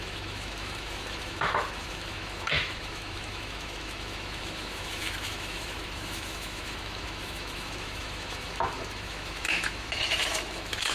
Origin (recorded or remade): remade